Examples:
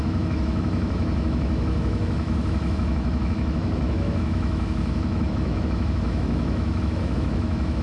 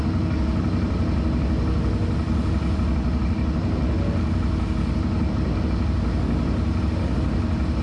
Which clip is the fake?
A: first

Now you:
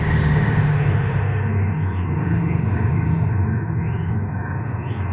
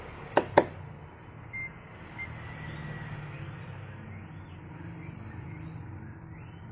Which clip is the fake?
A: first